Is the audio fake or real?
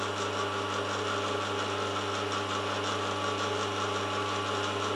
real